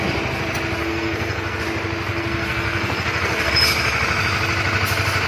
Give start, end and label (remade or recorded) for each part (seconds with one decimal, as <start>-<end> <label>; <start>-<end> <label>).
0.0-0.8 recorded; 0.8-1.6 remade; 1.6-2.1 recorded; 2.1-3.5 remade; 3.5-5.3 recorded